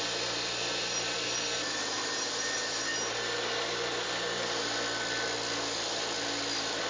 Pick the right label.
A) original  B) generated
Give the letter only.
A